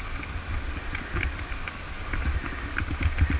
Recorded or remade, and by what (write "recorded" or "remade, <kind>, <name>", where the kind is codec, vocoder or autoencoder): recorded